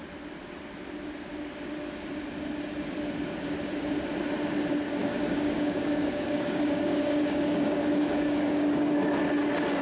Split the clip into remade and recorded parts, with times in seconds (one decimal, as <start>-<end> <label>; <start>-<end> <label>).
0.0-5.0 recorded; 5.0-8.9 remade; 8.9-9.8 recorded